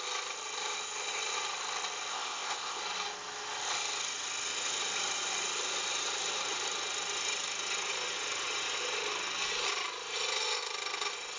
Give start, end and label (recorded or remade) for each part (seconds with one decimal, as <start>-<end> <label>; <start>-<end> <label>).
0.0-2.1 recorded; 2.1-2.8 remade; 2.8-11.4 recorded